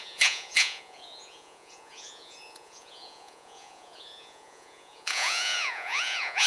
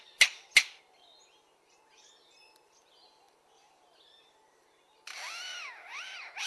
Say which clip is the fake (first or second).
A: first